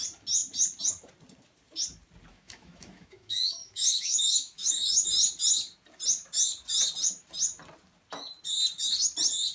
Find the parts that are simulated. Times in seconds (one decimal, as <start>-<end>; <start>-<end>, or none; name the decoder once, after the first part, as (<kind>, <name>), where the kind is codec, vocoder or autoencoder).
2.3-5.1 (autoencoder, DAC-VAE)